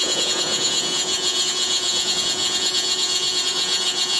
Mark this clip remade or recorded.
remade